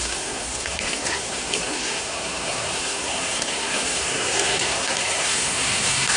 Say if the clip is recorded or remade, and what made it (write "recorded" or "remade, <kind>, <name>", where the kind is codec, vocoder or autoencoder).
remade, codec, SNAC